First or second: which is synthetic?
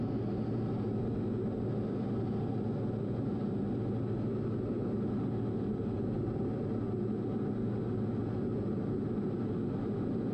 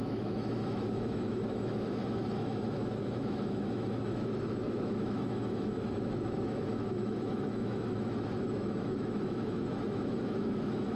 second